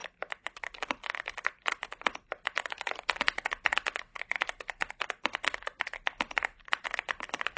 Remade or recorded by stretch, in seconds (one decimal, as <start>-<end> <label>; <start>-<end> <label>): 0.0-0.6 recorded; 0.6-4.1 remade; 4.1-4.9 recorded; 4.9-7.6 remade